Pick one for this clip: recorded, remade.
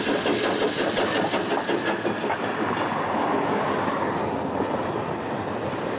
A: recorded